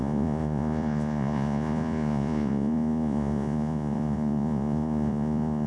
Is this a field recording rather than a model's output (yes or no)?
no